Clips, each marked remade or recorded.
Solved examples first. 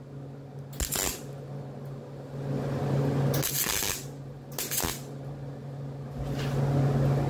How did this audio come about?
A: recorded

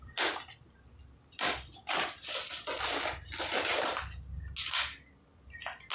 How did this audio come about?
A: recorded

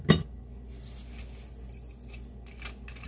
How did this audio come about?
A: recorded